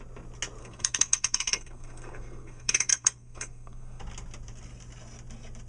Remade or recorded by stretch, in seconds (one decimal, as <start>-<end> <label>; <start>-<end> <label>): 0.0-0.6 recorded; 0.6-4.0 remade; 4.0-5.7 recorded

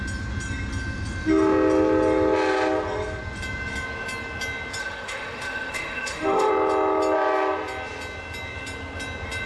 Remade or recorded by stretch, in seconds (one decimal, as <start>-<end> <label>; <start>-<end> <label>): 0.0-4.8 recorded; 4.8-6.5 remade; 6.5-9.5 recorded

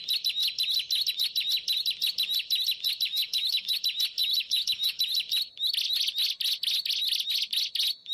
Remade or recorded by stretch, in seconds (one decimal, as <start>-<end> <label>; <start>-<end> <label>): 0.0-3.1 recorded; 3.1-3.8 remade; 3.8-4.2 recorded; 4.2-5.0 remade; 5.0-8.1 recorded

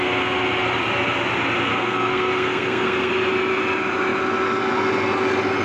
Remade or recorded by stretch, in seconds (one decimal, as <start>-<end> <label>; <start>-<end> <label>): 0.0-1.7 recorded; 1.7-3.1 remade; 3.1-5.6 recorded

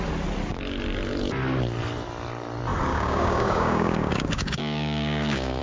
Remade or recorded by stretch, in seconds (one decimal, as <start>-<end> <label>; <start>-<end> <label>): 0.0-2.9 recorded; 2.9-5.6 remade

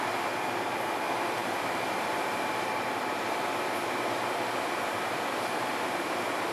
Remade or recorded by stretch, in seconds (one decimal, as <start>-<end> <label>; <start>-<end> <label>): 0.0-6.5 remade

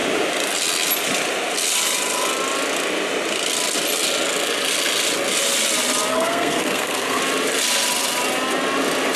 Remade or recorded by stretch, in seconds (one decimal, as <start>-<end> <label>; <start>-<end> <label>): 0.0-6.1 recorded; 6.1-7.2 remade; 7.2-9.2 recorded